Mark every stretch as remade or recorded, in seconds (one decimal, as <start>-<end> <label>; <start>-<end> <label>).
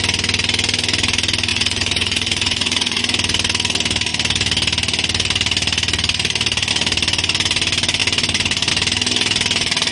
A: 0.0-1.5 recorded; 1.5-3.0 remade; 3.0-9.9 recorded